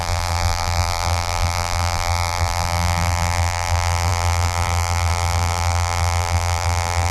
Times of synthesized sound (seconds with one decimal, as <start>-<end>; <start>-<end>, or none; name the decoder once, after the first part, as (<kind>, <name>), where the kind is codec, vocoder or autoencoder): 0.0-7.1 (vocoder, BigVGAN v2)